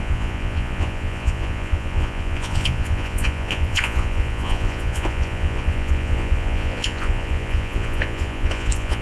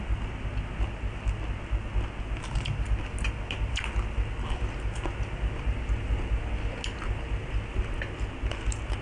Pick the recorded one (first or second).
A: second